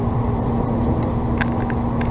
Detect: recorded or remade recorded